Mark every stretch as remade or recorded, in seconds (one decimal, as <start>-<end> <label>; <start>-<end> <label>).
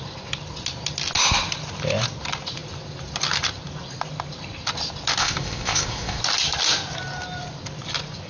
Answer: 0.0-5.2 recorded; 5.2-6.2 remade; 6.2-8.3 recorded